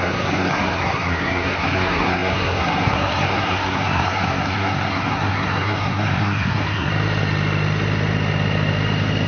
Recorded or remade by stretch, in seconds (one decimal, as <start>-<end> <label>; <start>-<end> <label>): 0.0-6.9 remade; 6.9-9.3 recorded